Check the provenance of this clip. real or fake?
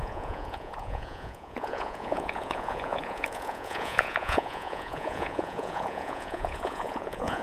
fake